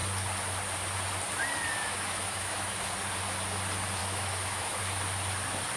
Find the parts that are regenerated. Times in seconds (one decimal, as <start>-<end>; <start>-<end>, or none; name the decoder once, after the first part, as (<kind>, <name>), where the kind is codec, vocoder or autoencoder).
1.8-2.8 (autoencoder, DAC-VAE); 4.0-4.8